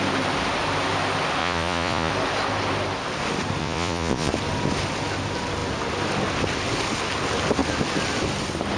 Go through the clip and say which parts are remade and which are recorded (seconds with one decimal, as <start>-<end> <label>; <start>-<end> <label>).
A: 0.0-1.4 recorded; 1.4-2.1 remade; 2.1-3.6 recorded; 3.6-4.3 remade; 4.3-8.8 recorded

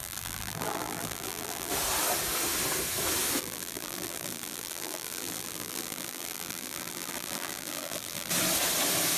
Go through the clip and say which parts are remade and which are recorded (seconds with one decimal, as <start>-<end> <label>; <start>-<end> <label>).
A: 0.0-1.7 remade; 1.7-3.4 recorded; 3.4-8.3 remade; 8.3-9.2 recorded

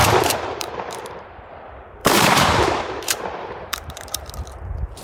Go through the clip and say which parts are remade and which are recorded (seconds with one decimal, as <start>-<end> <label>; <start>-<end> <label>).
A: 0.0-1.4 remade; 1.4-2.0 recorded; 2.0-4.3 remade; 4.3-5.0 recorded

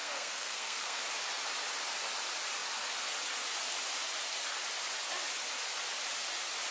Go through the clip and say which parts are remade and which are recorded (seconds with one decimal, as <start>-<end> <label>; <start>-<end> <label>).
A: 0.0-1.0 remade; 1.0-6.7 recorded

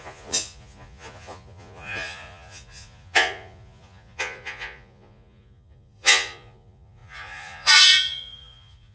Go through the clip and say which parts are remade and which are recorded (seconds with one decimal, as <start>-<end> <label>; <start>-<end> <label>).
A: 0.0-8.9 remade

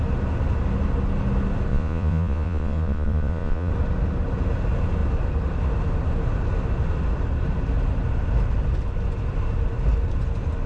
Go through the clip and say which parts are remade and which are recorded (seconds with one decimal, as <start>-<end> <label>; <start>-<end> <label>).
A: 0.0-1.7 recorded; 1.7-3.7 remade; 3.7-10.7 recorded

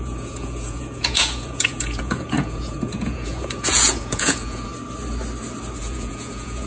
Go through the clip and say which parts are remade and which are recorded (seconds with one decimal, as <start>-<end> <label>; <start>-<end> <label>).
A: 0.0-4.7 remade; 4.7-5.8 recorded; 5.8-6.7 remade

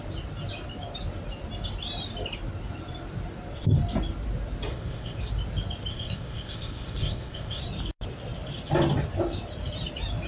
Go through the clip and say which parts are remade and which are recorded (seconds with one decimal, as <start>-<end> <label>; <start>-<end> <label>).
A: 0.0-4.7 recorded; 4.7-5.2 remade; 5.2-5.9 recorded; 5.9-7.6 remade; 7.6-10.3 recorded